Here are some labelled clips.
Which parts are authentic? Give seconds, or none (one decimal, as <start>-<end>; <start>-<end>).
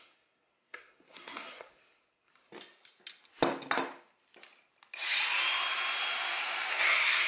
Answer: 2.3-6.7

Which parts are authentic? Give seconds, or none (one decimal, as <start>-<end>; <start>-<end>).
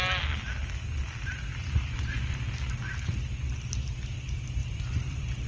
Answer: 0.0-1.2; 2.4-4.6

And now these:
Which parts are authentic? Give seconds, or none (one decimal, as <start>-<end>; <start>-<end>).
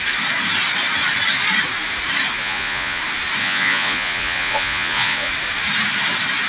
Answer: 0.0-2.4; 3.0-3.4; 5.3-6.5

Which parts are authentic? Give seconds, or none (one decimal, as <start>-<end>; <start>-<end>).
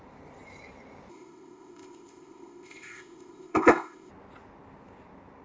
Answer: 0.0-1.1; 4.1-5.4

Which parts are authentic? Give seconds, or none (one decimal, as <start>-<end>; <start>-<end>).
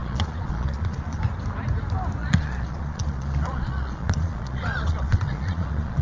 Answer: 1.2-2.2